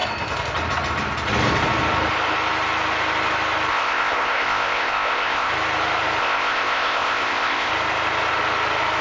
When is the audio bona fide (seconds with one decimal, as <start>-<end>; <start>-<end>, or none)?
0.0-3.7; 5.5-6.2; 7.7-9.0